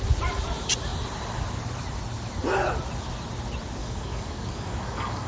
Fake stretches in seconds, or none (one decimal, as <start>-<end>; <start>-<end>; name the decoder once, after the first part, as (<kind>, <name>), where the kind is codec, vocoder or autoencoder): 3.8-5.3 (codec, DAC)